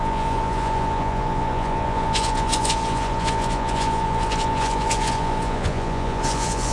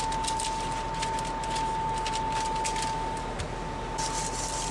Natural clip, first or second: second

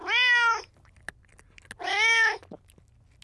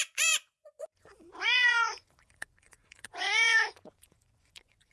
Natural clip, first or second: first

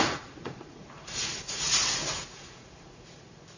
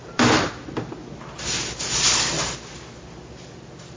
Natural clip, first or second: second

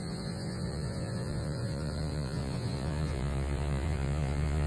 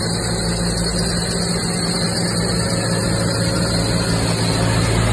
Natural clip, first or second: second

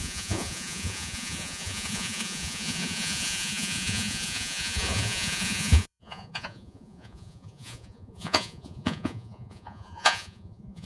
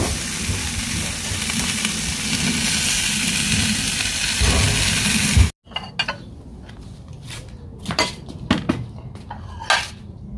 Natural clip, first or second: second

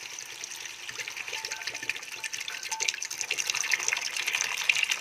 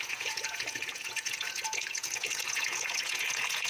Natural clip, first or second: first